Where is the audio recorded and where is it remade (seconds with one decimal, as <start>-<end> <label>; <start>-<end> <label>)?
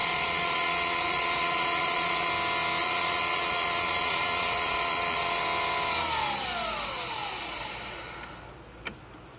0.0-2.3 remade; 2.3-2.8 recorded; 2.8-5.4 remade; 5.4-9.4 recorded